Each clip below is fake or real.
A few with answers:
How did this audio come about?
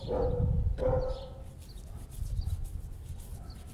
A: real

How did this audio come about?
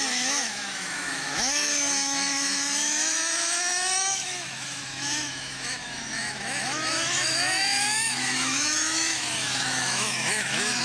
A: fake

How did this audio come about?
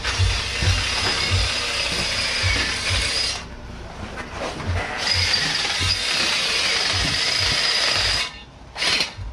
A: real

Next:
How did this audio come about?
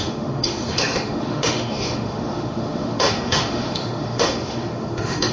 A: fake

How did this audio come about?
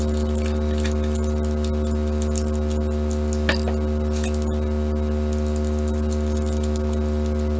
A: real